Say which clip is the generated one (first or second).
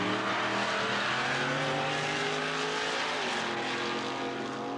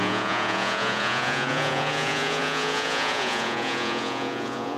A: second